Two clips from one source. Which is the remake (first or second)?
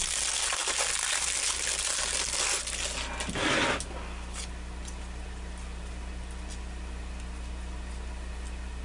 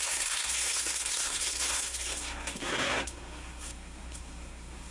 second